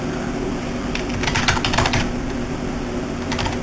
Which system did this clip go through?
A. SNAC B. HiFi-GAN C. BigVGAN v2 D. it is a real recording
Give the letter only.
D